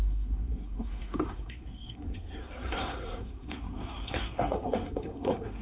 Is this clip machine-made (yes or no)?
yes